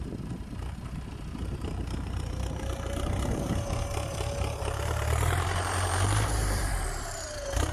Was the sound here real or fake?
fake